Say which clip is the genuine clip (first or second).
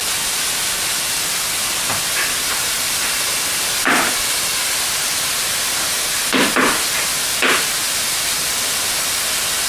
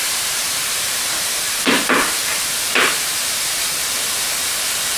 first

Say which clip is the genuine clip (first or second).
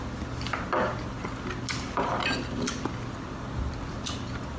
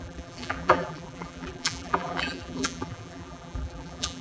first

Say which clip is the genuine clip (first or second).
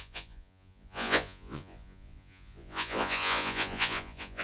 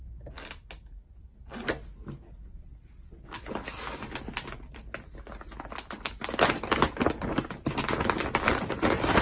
second